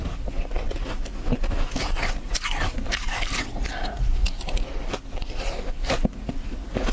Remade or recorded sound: recorded